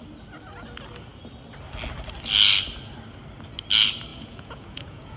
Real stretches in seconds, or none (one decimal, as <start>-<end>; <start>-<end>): 0.0-4.1